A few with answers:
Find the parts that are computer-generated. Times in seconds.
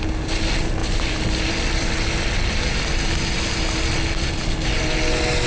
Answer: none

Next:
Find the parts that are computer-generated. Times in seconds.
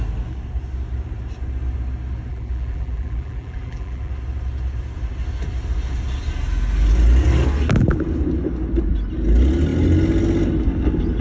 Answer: 2.3-4.1